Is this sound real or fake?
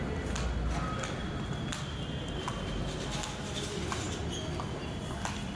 real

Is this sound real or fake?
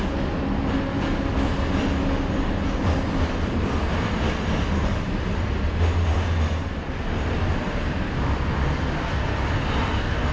real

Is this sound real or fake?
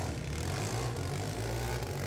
real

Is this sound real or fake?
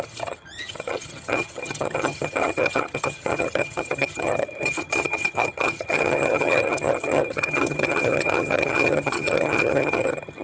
fake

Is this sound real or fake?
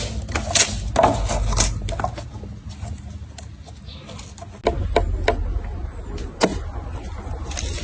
real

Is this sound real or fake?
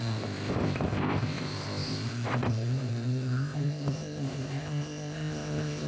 fake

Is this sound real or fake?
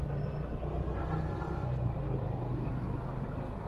real